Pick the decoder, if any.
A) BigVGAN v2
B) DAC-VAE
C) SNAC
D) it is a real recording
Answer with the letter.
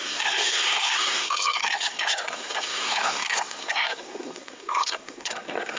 C